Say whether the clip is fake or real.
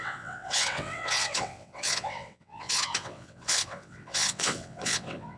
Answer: fake